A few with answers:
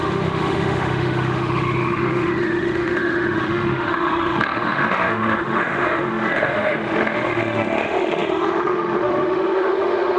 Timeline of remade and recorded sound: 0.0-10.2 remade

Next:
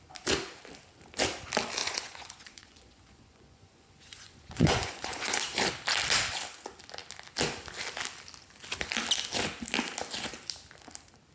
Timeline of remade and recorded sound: 0.0-1.8 recorded; 1.8-5.4 remade; 5.4-11.3 recorded